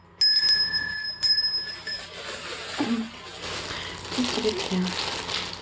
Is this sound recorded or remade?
recorded